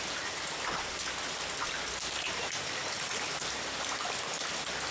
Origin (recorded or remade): recorded